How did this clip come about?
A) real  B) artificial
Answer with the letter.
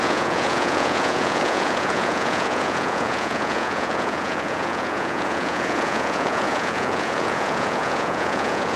B